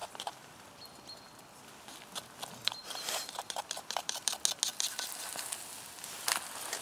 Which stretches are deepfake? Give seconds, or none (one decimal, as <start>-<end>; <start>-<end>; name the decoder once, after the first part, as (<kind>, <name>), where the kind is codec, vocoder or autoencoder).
0.0-0.6 (vocoder, BigVGAN v2); 2.8-4.3